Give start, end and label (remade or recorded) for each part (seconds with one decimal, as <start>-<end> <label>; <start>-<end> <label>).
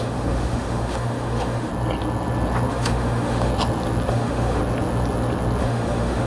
0.0-1.7 remade; 1.7-2.7 recorded; 2.7-3.5 remade; 3.5-4.1 recorded; 4.1-4.6 remade; 4.6-5.6 recorded; 5.6-6.3 remade